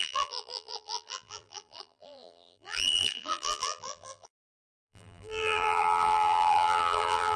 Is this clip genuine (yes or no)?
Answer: no